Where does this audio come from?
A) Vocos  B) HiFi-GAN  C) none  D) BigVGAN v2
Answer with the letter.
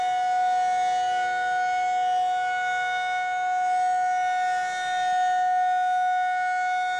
C